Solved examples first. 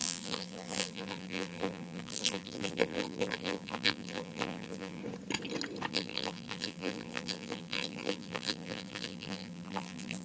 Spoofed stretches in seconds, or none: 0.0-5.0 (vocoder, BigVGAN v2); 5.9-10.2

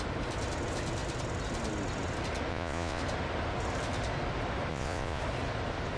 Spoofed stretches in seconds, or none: 2.5-3.0 (vocoder, Vocos); 4.7-5.2

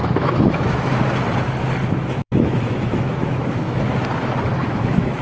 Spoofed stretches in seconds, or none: 0.0-1.0 (autoencoder, DAC-VAE); 2.2-4.0; 4.6-5.2

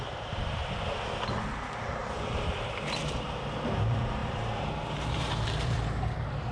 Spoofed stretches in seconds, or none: 0.0-0.6 (vocoder, BigVGAN v2); 1.7-6.5

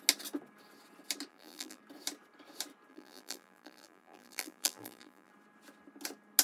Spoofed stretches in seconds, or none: 1.3-1.8 (vocoder, BigVGAN v2); 2.9-5.3